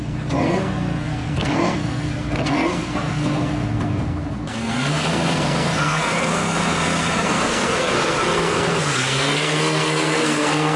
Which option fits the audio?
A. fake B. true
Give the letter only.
A